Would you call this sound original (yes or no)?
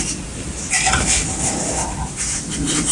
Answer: yes